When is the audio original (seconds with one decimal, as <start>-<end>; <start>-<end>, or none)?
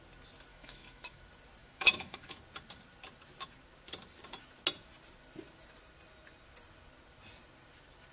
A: 0.0-0.5; 1.2-1.6; 2.4-8.1